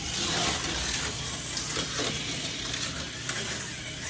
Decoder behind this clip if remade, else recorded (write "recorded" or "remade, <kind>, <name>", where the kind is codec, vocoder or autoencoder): recorded